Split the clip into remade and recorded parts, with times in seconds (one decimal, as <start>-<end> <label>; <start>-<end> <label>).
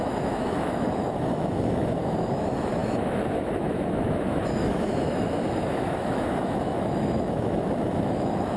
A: 0.0-8.6 remade